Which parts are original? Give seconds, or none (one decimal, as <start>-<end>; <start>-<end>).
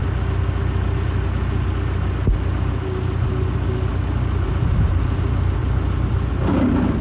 0.0-7.0